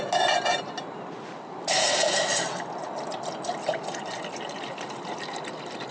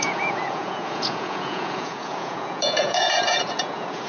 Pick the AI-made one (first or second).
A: second